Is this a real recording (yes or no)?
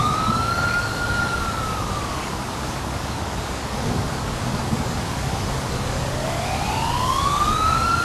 no